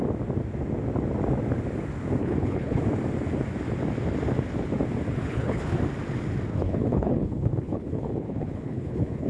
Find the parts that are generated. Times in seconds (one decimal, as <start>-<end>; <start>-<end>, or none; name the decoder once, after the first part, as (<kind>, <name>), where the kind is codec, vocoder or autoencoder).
2.2-2.8 (codec, HILCodec); 5.2-5.8; 6.5-9.3